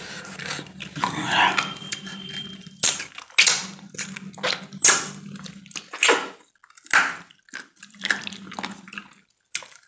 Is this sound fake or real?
real